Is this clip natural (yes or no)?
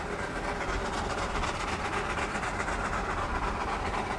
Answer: yes